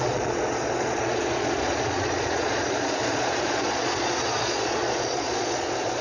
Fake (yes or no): yes